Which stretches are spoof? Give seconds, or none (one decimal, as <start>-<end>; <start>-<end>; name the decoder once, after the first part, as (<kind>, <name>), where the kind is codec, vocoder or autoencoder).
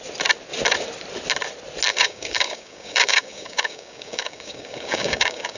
1.9-5.6 (codec, DAC)